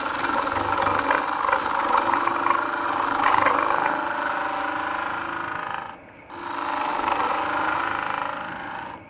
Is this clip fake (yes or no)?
no